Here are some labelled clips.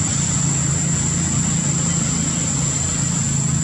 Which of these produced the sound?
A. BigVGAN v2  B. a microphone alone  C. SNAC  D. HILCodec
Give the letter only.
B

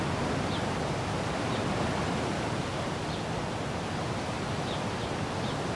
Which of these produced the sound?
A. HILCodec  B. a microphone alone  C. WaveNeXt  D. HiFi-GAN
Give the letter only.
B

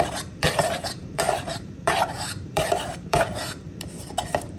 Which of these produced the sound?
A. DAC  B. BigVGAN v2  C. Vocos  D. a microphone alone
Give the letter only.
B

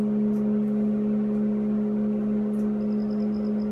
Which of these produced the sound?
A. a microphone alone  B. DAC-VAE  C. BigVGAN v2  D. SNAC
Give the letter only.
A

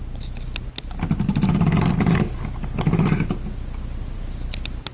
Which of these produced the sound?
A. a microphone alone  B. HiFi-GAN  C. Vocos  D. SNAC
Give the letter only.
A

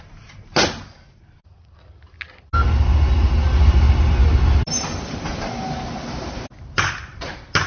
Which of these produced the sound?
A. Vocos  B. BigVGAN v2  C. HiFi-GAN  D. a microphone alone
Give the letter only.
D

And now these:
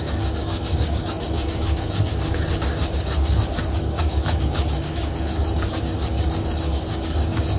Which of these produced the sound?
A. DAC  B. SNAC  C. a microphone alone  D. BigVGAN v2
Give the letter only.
A